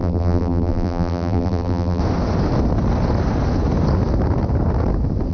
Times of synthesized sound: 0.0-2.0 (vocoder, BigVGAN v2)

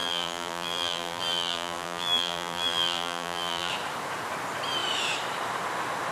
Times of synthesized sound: 0.0-3.7 (vocoder, BigVGAN v2)

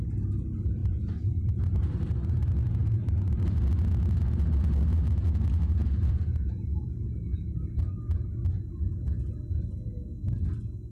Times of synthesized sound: 0.8-2.0 (vocoder, BigVGAN v2); 2.8-3.6; 5.8-7.8

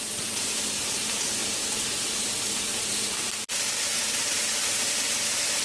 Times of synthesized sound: 0.0-5.6 (vocoder, BigVGAN v2)

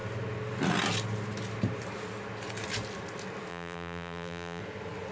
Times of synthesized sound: 3.5-4.6 (vocoder, BigVGAN v2)

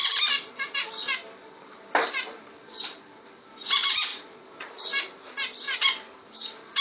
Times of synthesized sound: 0.0-6.8 (vocoder, BigVGAN v2)

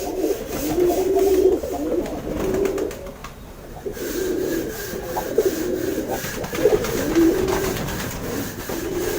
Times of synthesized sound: 3.2-7.1 (vocoder, BigVGAN v2); 7.5-8.1